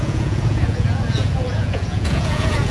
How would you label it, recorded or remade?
remade